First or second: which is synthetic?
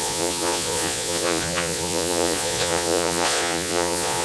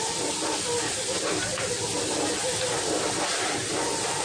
first